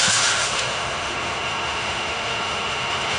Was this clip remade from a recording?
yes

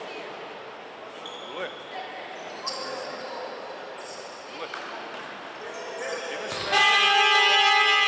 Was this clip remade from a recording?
no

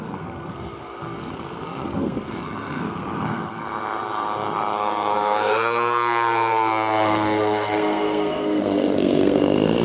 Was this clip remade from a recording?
yes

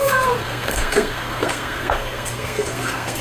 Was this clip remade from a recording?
yes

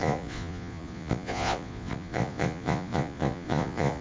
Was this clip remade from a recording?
yes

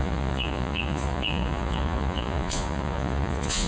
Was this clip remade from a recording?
yes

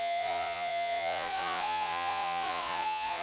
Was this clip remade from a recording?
yes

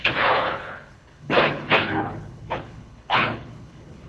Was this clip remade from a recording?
yes